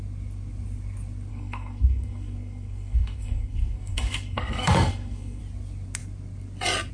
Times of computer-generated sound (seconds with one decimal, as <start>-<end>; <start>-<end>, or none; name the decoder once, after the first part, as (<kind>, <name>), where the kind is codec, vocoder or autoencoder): 1.3-5.4 (codec, SNAC)